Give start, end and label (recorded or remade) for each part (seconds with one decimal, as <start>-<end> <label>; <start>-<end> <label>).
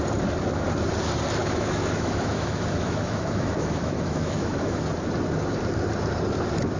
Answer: 0.0-1.4 recorded; 1.4-4.9 remade; 4.9-6.8 recorded